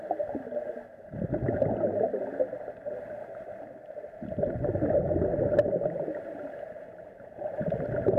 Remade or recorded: recorded